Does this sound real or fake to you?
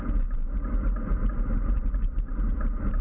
fake